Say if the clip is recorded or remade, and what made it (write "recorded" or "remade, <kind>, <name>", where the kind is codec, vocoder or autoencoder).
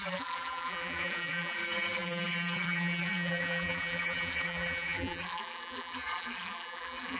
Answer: remade, vocoder, BigVGAN v2